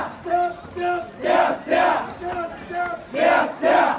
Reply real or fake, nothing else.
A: real